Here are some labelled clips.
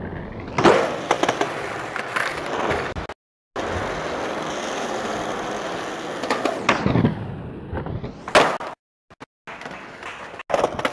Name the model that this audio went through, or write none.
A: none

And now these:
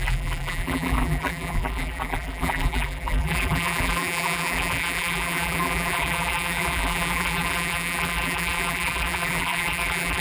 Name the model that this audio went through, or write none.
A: vocoder, BigVGAN v2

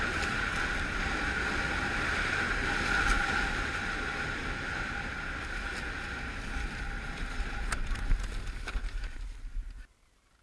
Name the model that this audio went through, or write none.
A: none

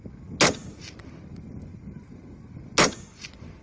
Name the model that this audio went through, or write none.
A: none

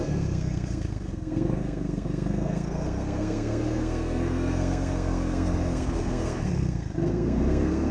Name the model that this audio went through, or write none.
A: codec, SNAC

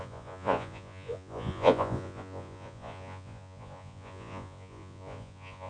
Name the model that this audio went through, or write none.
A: vocoder, Vocos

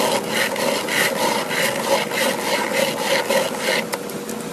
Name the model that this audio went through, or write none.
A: none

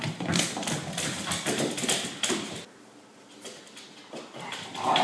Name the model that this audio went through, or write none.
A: none